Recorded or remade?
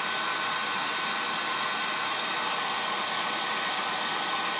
recorded